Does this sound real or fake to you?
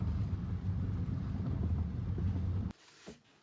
real